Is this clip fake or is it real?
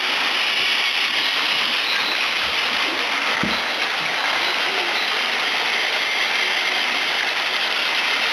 real